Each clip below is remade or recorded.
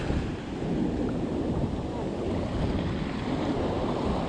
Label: recorded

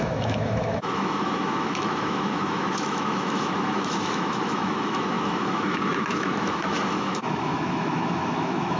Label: remade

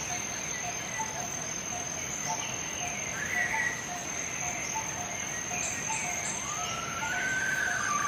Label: recorded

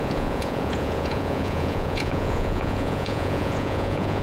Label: remade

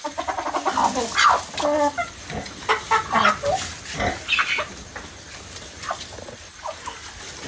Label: recorded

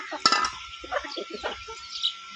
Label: recorded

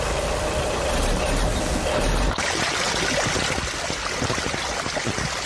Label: recorded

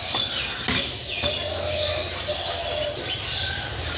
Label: recorded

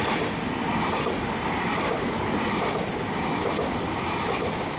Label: recorded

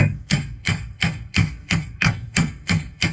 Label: remade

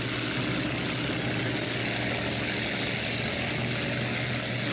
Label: recorded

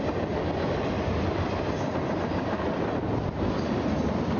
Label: recorded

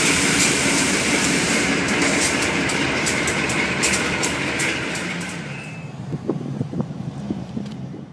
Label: remade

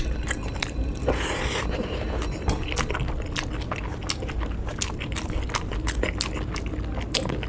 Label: recorded